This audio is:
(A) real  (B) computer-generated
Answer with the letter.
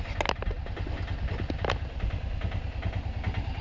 A